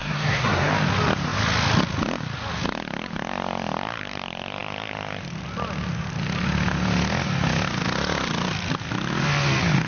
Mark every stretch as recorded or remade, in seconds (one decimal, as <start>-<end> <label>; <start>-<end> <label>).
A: 0.0-0.7 remade; 0.7-9.9 recorded